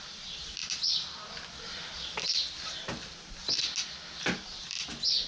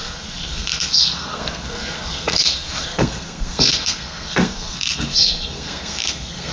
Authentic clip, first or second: first